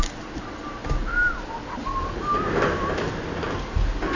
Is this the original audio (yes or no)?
yes